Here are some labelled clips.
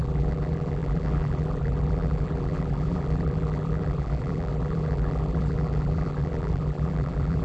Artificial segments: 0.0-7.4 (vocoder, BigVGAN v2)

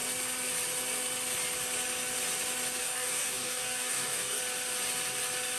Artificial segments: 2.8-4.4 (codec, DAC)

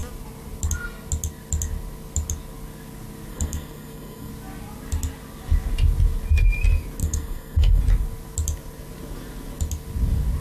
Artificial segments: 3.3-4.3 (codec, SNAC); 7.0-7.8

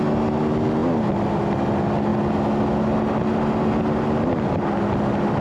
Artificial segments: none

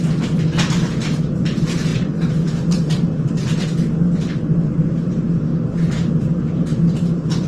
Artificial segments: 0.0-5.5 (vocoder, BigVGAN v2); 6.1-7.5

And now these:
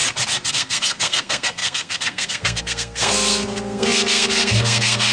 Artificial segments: 0.5-5.1 (codec, SNAC)

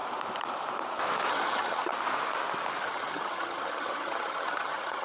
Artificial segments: 1.3-1.9 (vocoder, HiFi-GAN); 2.8-5.0